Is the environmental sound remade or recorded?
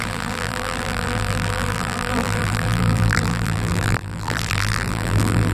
remade